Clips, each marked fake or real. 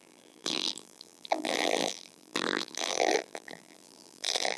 fake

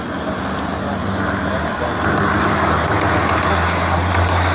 real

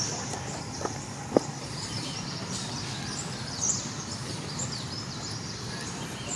fake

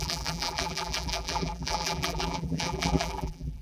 fake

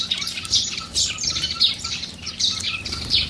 fake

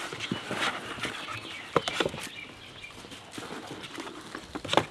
real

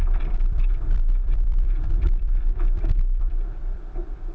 fake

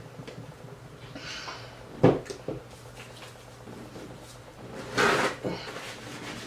real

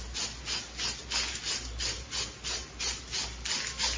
real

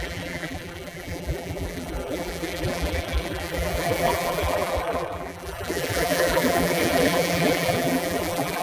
fake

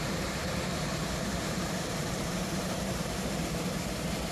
fake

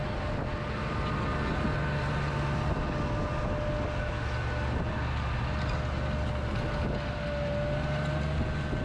real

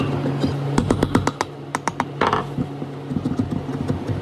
real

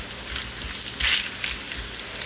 real